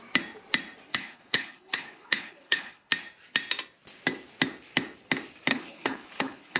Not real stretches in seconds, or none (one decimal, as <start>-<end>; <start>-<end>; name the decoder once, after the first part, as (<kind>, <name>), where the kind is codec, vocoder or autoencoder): 0.9-2.9 (codec, HILCodec); 5.5-6.6